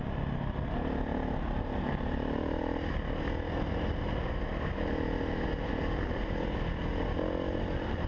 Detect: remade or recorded recorded